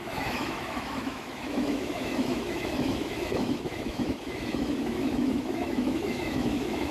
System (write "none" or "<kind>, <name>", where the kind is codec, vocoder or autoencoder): autoencoder, DAC-VAE